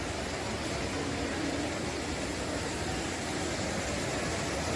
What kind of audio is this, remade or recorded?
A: recorded